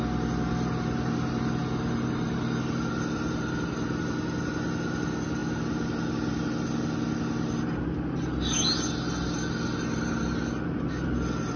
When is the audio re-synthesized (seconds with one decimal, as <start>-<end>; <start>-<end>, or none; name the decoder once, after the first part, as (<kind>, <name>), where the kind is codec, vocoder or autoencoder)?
none